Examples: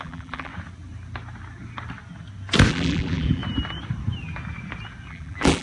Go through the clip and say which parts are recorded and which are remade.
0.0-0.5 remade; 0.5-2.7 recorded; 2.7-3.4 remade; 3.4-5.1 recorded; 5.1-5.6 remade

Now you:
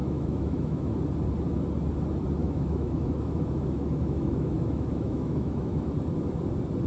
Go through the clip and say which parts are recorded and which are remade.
0.0-0.9 remade; 0.9-2.4 recorded; 2.4-5.9 remade; 5.9-6.9 recorded

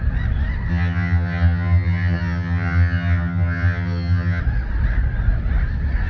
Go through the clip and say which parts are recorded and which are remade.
0.0-0.7 recorded; 0.7-4.4 remade; 4.4-6.1 recorded

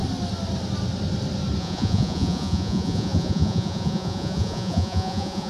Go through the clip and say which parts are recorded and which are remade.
0.0-1.6 recorded; 1.6-5.5 remade